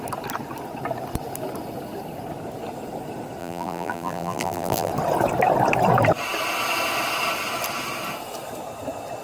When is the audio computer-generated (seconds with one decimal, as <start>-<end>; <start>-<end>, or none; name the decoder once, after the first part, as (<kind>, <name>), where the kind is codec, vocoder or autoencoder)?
3.4-4.9 (vocoder, BigVGAN v2)